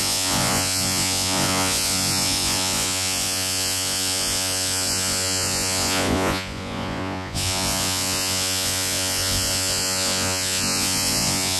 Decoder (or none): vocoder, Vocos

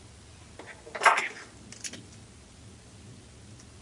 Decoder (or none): none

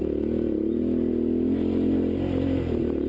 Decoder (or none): none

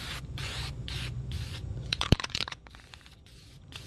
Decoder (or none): vocoder, Vocos